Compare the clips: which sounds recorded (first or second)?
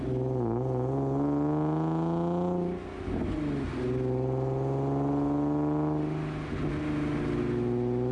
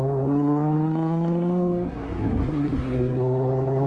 first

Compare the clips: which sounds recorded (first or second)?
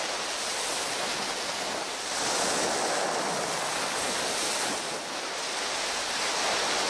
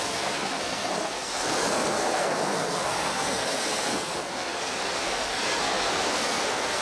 first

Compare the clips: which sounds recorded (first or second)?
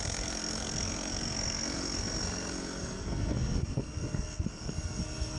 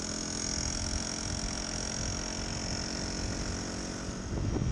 second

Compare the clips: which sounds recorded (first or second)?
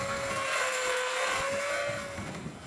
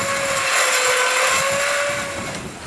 second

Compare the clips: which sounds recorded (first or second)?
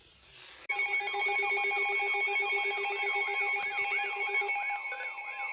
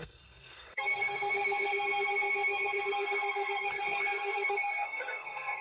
first